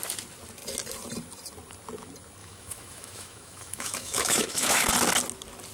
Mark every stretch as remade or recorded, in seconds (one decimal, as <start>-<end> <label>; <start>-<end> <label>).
0.0-2.4 recorded; 2.4-4.9 remade; 4.9-5.7 recorded